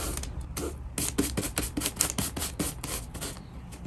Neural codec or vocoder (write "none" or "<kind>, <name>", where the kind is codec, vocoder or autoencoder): none